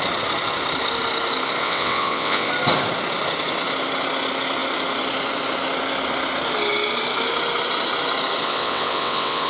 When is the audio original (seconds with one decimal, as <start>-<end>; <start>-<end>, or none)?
0.0-1.6; 2.5-8.4